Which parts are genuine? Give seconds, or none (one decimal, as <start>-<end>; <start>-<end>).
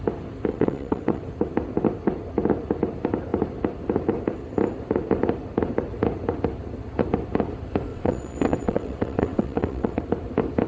0.0-0.5; 1.2-7.9; 10.0-10.7